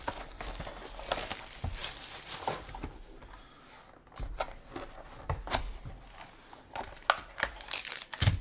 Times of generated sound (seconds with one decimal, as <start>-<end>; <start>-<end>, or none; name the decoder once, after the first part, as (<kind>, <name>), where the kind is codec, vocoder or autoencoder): 1.8-2.7 (vocoder, BigVGAN v2)

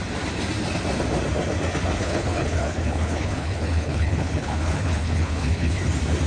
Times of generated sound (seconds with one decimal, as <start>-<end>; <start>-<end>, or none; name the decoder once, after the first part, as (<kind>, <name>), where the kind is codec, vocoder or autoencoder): 2.0-5.8 (codec, HILCodec)

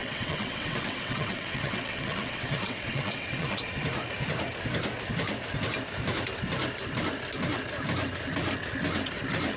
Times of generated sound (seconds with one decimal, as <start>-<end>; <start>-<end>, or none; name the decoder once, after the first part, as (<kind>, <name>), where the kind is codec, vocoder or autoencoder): 0.0-3.6 (vocoder, WaveNeXt)

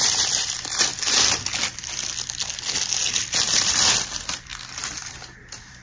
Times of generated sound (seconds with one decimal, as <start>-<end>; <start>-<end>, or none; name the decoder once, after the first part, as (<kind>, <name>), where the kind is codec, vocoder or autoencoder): 0.0-0.9 (vocoder, BigVGAN v2); 3.2-4.5; 5.1-5.8

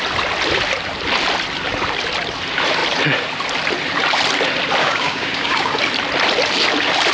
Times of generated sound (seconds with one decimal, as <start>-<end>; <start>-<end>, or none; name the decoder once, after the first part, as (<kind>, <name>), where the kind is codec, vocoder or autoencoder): 4.8-5.8 (codec, DAC)

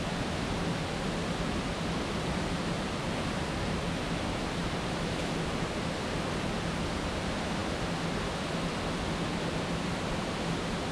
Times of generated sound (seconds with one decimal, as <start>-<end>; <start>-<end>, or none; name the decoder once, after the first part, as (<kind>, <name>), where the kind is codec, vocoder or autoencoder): none

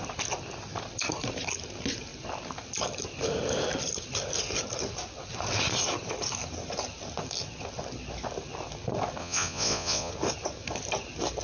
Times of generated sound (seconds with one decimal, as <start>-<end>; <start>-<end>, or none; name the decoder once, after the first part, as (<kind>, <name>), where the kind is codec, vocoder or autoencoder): 9.2-10.1 (vocoder, Vocos)

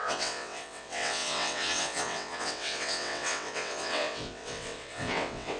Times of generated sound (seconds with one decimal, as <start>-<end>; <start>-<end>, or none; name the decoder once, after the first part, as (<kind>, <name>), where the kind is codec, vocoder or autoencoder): 0.0-5.6 (vocoder, WaveNeXt)